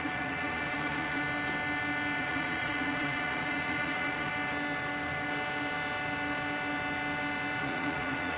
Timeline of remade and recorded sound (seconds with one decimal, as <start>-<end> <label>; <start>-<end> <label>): 0.0-1.2 remade; 1.2-2.2 recorded; 2.2-4.3 remade; 4.3-7.6 recorded; 7.6-8.4 remade